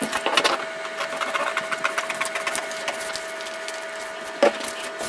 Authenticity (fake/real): real